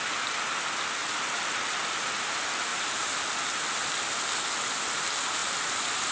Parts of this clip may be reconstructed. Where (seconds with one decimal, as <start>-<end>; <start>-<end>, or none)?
1.0-1.8; 2.7-3.3